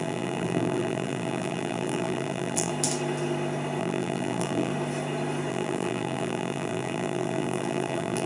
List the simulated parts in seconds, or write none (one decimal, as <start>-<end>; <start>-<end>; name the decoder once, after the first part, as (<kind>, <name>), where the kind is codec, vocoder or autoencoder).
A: 0.0-2.7 (vocoder, BigVGAN v2); 3.8-4.7; 5.5-8.3